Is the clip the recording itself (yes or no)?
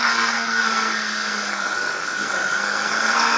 no